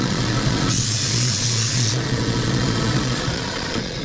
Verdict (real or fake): fake